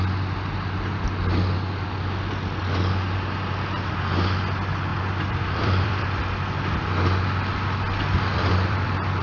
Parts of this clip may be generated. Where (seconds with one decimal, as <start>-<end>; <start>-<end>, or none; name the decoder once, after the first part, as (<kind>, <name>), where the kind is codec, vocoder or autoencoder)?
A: 4.9-6.0 (vocoder, BigVGAN v2); 8.3-9.2